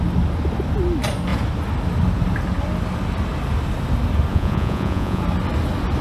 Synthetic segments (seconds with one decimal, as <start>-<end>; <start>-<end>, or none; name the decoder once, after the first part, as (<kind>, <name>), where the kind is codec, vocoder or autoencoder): 4.3-5.2 (vocoder, Vocos)